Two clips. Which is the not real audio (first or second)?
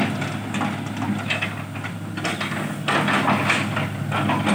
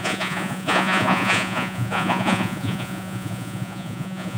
second